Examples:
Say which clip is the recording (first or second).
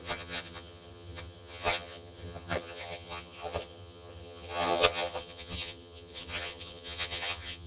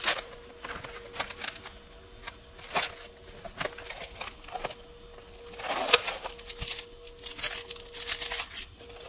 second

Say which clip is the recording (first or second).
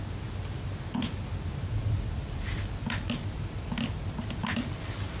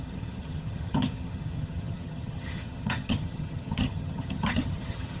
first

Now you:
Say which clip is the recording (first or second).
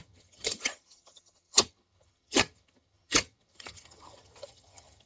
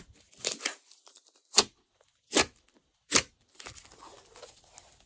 second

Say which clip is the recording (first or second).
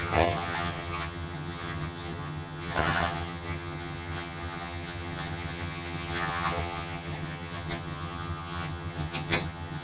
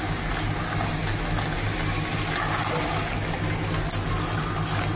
second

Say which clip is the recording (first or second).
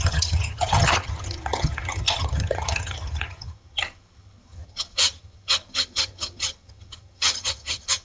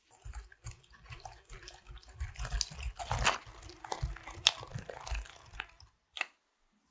second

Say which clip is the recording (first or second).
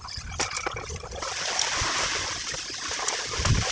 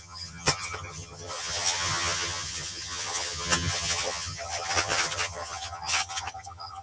first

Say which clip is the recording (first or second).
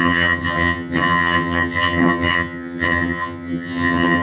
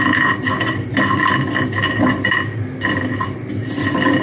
second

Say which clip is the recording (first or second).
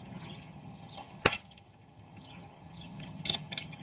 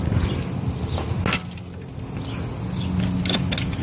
second